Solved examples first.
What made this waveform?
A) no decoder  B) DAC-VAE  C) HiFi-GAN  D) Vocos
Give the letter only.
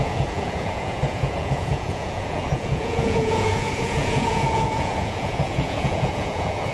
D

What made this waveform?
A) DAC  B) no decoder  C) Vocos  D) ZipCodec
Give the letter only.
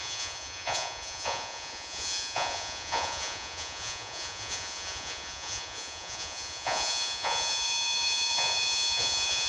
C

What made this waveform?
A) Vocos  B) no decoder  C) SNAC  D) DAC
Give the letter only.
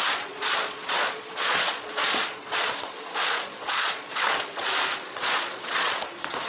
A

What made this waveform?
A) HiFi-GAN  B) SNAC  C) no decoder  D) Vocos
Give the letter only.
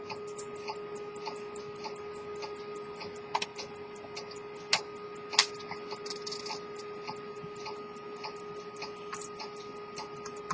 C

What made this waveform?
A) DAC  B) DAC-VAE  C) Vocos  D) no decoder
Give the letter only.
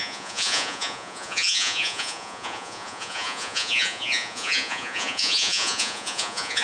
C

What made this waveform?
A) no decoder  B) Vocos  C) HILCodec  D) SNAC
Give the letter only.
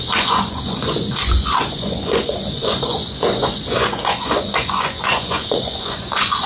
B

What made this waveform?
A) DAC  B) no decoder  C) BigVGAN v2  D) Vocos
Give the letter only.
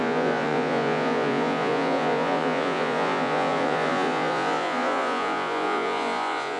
D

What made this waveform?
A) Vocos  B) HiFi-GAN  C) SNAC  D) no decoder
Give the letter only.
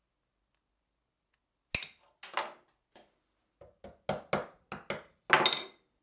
D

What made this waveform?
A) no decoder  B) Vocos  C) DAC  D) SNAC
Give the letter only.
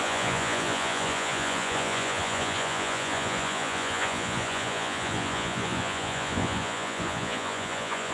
B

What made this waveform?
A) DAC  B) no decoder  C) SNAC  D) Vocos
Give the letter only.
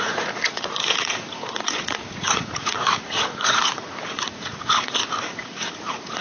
D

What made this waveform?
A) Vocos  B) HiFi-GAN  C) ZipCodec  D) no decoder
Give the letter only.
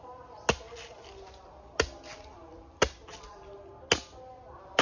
D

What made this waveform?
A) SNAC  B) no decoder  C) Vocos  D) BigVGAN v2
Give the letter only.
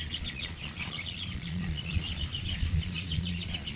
C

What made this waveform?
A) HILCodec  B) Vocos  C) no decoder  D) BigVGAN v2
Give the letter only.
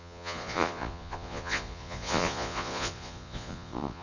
B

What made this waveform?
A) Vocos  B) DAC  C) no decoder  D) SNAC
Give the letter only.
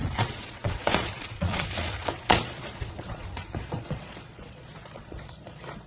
A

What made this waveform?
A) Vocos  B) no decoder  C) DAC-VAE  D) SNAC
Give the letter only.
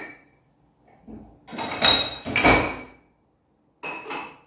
B